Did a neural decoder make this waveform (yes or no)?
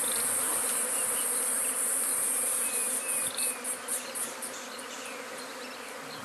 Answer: yes